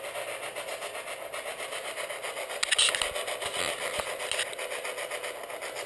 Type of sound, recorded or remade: recorded